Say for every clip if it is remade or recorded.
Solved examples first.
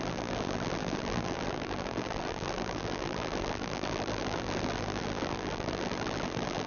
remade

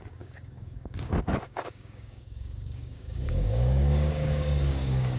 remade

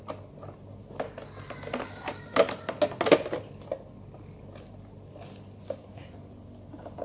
recorded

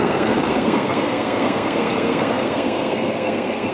remade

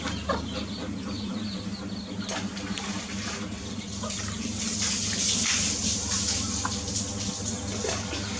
recorded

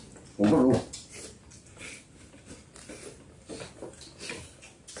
recorded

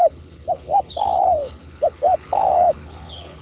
remade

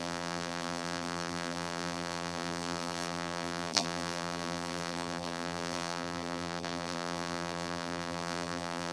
remade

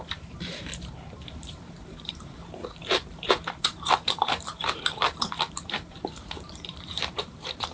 remade